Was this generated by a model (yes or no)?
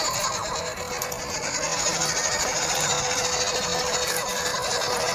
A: no